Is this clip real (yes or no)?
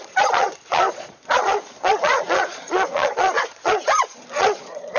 no